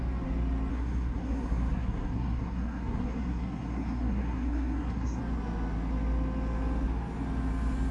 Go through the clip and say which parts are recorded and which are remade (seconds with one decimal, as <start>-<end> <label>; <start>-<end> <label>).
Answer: 0.0-0.7 recorded; 0.7-5.2 remade; 5.2-7.9 recorded